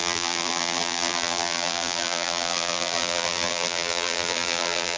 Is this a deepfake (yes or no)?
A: yes